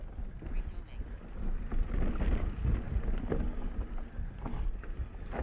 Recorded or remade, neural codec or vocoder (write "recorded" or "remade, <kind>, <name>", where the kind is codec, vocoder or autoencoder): recorded